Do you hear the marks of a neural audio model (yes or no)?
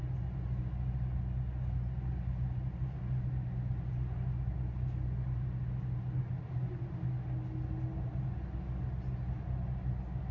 no